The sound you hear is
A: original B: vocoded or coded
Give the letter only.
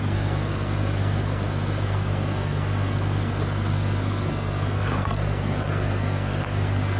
B